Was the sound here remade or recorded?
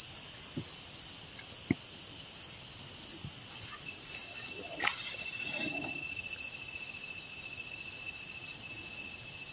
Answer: recorded